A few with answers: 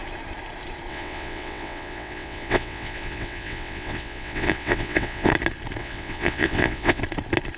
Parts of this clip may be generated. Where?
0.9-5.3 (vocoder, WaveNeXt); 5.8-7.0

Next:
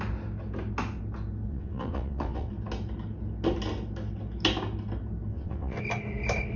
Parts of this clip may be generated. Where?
1.5-2.5 (vocoder, WaveNeXt); 5.3-5.8

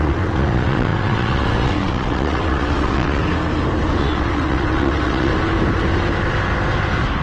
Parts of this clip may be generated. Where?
0.0-3.2 (vocoder, WaveNeXt); 4.0-5.3

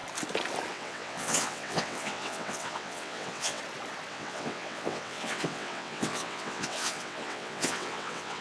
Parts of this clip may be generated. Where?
0.7-3.6 (vocoder, WaveNeXt); 4.1-8.4